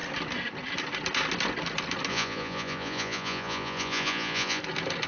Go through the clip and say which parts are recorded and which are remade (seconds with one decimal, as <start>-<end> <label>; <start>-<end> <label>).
0.0-2.1 recorded; 2.1-4.6 remade; 4.6-5.1 recorded

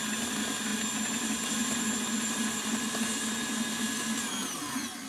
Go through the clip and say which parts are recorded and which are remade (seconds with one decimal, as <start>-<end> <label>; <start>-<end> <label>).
0.0-5.1 recorded

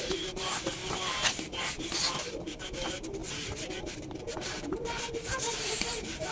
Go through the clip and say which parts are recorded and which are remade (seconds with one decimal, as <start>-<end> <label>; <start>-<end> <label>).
0.0-0.8 remade; 0.8-2.1 recorded; 2.1-6.3 remade

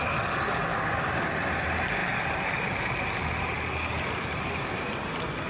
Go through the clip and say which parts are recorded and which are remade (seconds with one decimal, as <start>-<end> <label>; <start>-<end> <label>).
0.0-0.7 recorded; 0.7-1.3 remade; 1.3-5.5 recorded

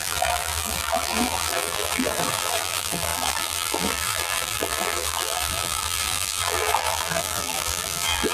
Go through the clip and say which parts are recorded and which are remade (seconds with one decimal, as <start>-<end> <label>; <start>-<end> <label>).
0.0-8.3 remade

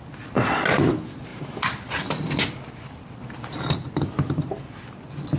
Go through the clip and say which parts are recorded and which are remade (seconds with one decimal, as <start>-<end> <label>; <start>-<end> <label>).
0.0-5.4 recorded